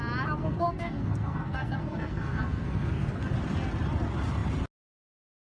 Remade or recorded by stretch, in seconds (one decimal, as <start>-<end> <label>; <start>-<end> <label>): 0.0-0.4 recorded; 0.4-3.3 remade; 3.3-5.5 recorded

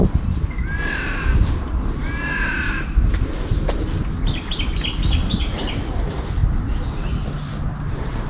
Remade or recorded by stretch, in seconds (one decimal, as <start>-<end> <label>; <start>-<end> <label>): 0.0-8.3 recorded

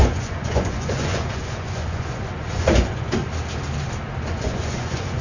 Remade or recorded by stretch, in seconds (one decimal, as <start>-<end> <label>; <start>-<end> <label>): 0.0-3.2 remade; 3.2-4.2 recorded; 4.2-5.2 remade